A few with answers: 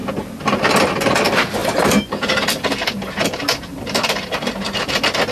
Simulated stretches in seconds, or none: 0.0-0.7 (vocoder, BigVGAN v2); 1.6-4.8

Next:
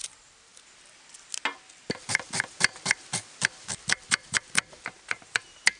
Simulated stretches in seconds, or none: 3.4-4.6 (vocoder, BigVGAN v2)

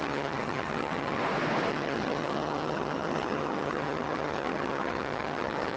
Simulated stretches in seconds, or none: 0.0-1.2 (vocoder, HiFi-GAN); 1.7-5.8

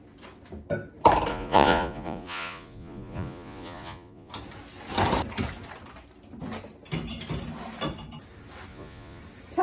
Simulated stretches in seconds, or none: 1.3-4.3 (vocoder, Vocos); 8.7-9.2

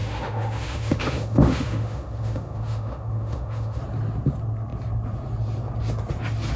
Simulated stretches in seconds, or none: 0.0-3.8 (autoencoder, DAC-VAE)

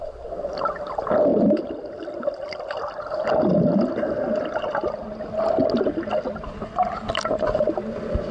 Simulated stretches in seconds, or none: none

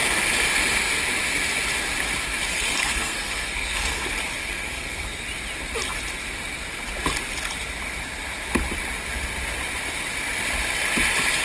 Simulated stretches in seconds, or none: 2.5-4.0 (codec, SNAC); 4.4-5.2